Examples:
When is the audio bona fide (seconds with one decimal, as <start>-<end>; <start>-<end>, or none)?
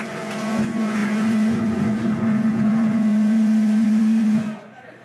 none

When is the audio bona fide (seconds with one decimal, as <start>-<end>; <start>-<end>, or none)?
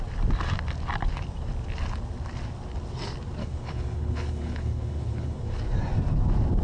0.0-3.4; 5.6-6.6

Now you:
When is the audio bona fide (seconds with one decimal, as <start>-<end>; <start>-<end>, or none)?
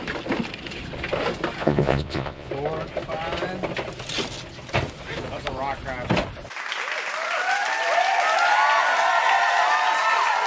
0.0-1.6; 2.5-10.5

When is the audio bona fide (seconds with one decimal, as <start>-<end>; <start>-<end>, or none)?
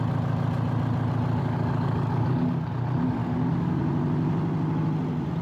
0.0-1.4; 2.7-3.2; 3.8-5.4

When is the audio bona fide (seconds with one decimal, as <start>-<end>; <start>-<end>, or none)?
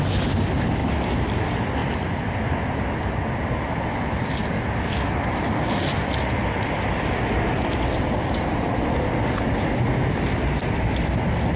0.0-1.8; 2.3-11.6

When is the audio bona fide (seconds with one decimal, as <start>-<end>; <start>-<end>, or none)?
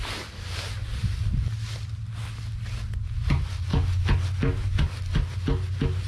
0.0-6.1